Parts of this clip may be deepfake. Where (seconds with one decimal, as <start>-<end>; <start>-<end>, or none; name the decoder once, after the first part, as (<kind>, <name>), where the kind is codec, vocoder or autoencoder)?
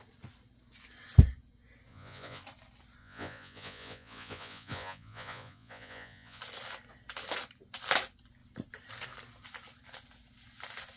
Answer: 1.9-2.4 (vocoder, Vocos); 3.0-6.4